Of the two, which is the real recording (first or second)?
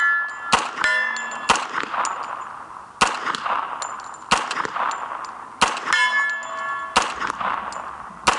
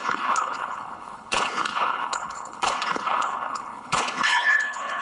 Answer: first